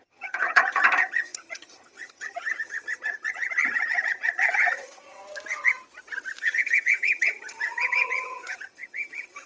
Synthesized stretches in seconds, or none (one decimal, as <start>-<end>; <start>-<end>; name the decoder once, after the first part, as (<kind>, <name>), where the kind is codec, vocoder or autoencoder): 0.0-5.2 (vocoder, HiFi-GAN); 6.4-9.5